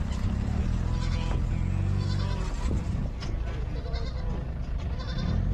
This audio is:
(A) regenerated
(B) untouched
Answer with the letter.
B